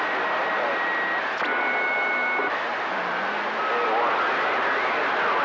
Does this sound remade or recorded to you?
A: recorded